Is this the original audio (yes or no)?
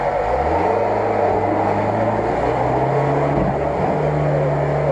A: yes